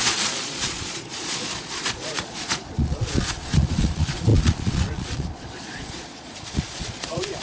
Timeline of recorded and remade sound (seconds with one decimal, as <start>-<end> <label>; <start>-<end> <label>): 0.0-7.4 remade